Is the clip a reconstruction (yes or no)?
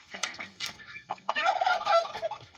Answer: yes